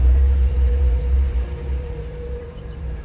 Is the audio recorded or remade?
remade